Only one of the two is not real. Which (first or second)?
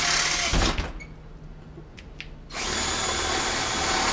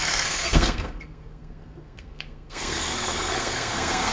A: second